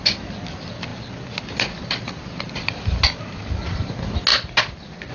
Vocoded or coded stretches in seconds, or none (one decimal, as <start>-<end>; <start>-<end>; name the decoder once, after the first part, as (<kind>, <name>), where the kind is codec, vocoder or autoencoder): none